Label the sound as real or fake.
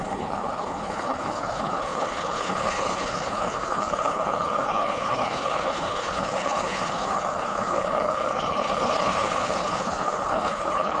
fake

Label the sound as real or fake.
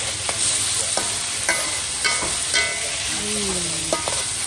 real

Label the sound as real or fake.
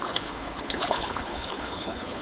fake